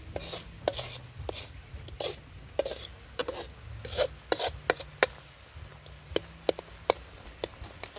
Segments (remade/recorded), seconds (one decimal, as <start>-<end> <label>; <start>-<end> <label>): 0.0-8.0 recorded